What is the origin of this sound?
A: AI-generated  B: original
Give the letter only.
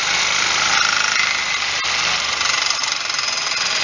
B